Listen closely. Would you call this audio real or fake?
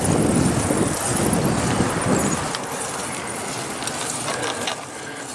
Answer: real